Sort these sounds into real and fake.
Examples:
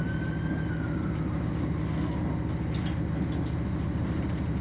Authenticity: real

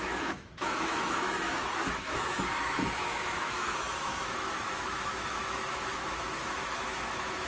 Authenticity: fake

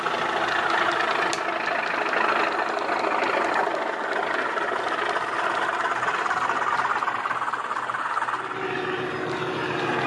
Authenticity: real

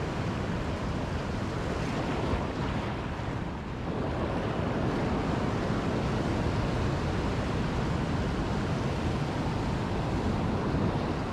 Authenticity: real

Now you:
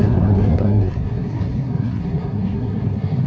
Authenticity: fake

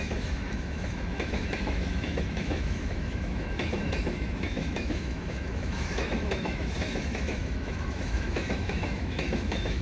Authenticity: fake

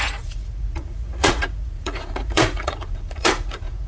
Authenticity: fake